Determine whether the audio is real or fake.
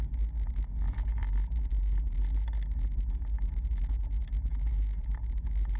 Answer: real